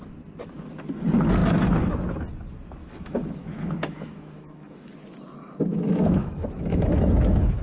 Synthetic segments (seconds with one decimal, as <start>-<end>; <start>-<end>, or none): 2.8-4.9; 5.7-7.6